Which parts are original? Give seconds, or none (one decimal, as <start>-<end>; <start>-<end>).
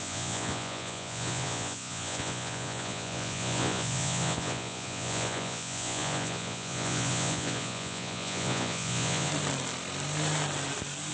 9.3-11.1